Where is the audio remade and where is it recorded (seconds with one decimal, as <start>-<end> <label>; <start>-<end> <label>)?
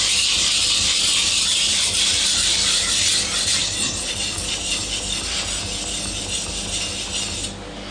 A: 0.0-1.2 recorded; 1.2-2.9 remade; 2.9-3.6 recorded; 3.6-5.6 remade; 5.6-7.9 recorded